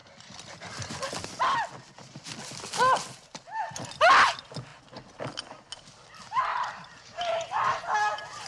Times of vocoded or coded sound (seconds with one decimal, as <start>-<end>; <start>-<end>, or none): 6.5-7.8